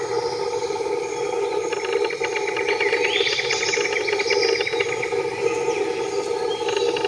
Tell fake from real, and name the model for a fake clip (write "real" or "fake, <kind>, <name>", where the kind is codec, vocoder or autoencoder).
real